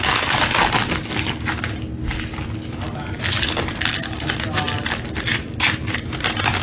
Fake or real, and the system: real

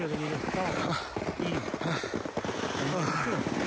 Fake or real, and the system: real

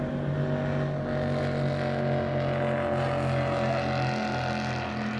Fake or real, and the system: real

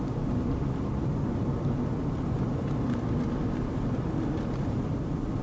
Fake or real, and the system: real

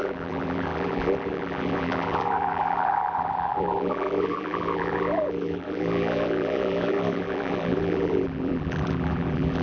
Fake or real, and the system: fake, vocoder, BigVGAN v2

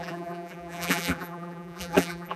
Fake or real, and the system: fake, vocoder, BigVGAN v2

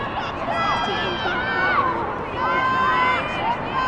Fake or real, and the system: real